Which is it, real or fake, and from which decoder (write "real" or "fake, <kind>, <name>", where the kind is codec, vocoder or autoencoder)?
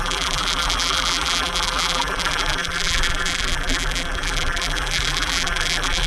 fake, vocoder, BigVGAN v2